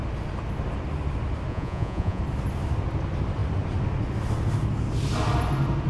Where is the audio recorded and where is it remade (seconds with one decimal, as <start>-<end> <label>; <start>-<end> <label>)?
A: 0.0-1.5 recorded; 1.5-2.2 remade; 2.2-5.9 recorded